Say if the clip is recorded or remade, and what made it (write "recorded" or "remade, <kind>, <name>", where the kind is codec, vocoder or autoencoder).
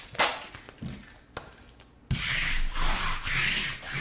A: recorded